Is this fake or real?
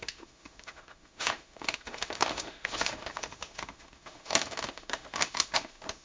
fake